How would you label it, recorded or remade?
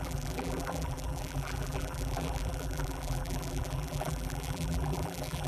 remade